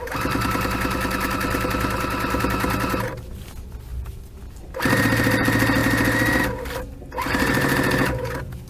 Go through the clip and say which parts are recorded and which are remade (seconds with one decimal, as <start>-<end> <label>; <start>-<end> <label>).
0.0-8.7 recorded

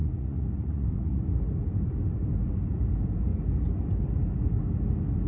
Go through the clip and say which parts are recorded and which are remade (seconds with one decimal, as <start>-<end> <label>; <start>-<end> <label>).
0.0-1.2 remade; 1.2-5.3 recorded

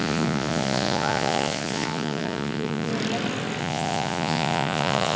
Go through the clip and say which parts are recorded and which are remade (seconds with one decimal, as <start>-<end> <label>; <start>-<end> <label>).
0.0-2.9 remade; 2.9-3.6 recorded; 3.6-5.2 remade